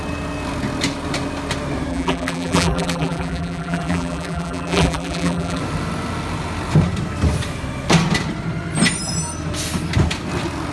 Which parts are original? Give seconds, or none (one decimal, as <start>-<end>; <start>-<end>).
0.0-1.9; 5.6-10.7